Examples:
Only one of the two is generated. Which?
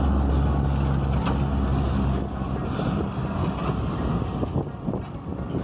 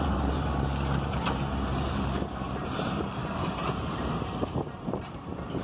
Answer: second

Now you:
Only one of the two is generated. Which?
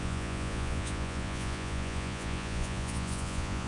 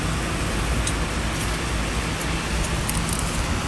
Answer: first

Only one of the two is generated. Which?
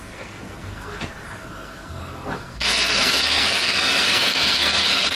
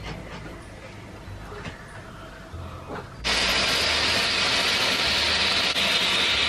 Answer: first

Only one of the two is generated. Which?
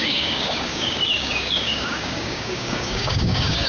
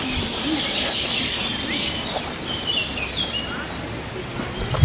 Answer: first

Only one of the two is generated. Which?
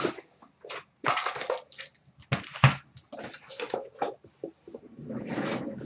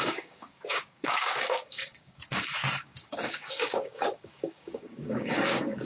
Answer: second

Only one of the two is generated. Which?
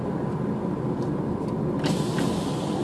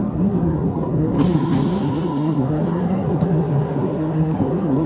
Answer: second